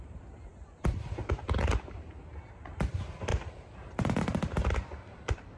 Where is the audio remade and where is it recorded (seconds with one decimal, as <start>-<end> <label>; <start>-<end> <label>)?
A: 0.0-0.5 remade; 0.5-2.7 recorded; 2.7-3.3 remade; 3.3-5.1 recorded; 5.1-5.6 remade